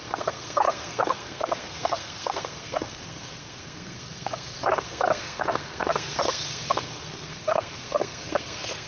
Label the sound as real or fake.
fake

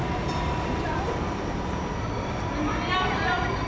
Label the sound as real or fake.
real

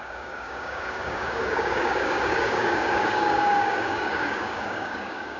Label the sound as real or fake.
fake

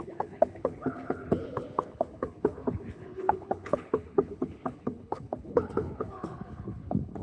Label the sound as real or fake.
fake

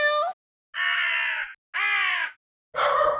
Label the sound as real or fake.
real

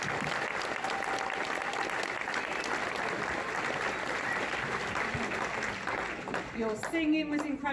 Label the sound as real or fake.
real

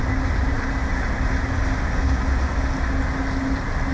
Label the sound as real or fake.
real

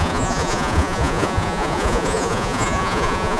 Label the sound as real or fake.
fake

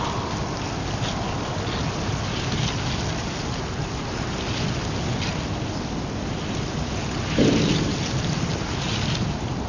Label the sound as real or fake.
real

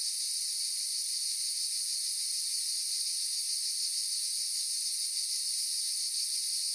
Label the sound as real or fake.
real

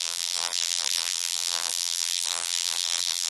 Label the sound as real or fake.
fake